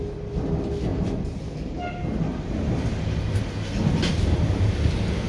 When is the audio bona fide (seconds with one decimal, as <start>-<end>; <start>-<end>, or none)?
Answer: 0.0-5.3